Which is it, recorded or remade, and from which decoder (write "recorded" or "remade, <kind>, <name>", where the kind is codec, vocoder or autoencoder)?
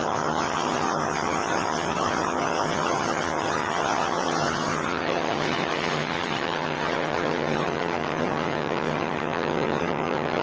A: remade, vocoder, HiFi-GAN